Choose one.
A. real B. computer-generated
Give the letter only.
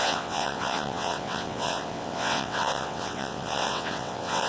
B